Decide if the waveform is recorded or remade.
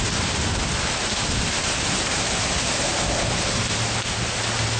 recorded